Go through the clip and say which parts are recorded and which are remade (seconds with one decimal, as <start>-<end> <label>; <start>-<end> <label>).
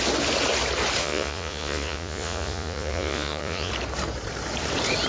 0.0-1.0 recorded; 1.0-3.7 remade; 3.7-5.1 recorded